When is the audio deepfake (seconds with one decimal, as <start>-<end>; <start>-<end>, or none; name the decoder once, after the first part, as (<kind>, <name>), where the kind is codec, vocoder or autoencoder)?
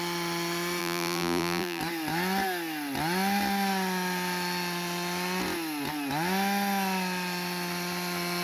0.8-1.8 (vocoder, BigVGAN v2)